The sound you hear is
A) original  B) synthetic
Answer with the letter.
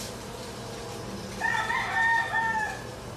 A